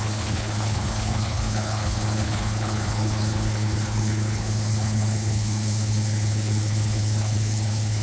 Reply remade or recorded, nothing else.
remade